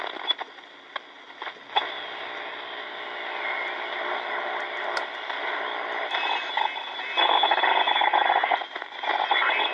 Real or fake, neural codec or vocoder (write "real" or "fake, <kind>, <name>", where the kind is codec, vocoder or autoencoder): real